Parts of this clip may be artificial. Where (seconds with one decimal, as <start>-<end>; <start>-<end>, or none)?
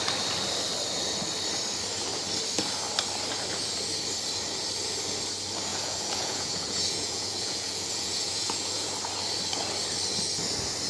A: 5.7-8.9